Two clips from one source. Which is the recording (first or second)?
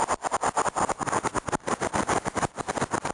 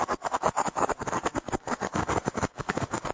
first